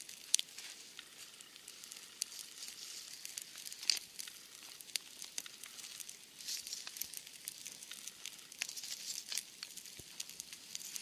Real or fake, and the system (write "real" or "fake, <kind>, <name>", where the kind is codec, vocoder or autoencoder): real